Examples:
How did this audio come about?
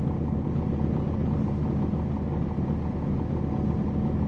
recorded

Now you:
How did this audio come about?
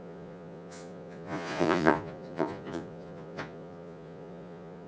remade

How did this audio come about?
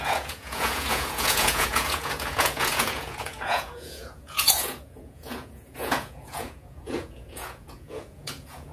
remade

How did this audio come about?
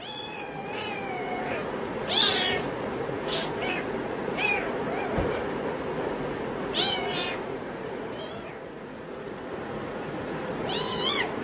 remade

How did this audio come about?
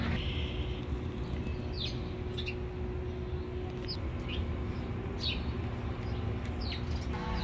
recorded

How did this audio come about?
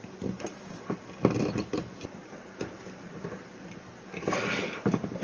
recorded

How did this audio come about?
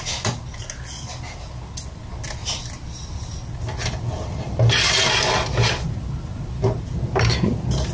recorded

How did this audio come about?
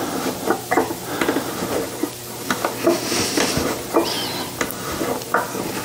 recorded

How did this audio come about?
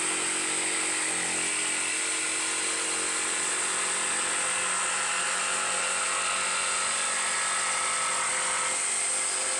recorded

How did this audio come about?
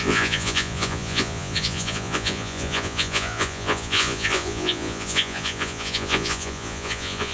remade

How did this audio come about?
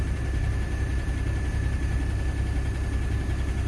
recorded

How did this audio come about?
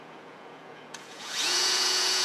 remade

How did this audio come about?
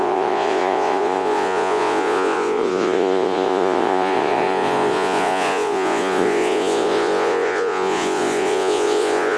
remade